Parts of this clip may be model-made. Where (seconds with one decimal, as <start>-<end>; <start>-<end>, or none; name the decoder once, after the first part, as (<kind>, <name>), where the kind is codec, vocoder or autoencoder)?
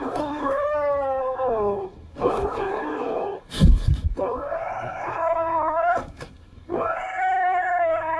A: 0.0-0.6 (codec, SNAC); 1.2-8.2